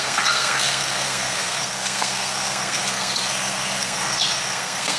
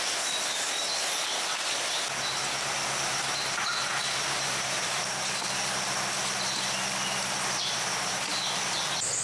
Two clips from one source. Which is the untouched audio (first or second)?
second